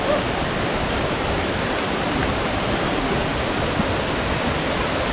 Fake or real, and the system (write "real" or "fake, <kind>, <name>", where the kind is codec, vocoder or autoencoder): real